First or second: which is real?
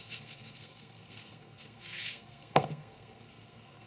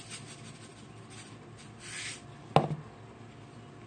second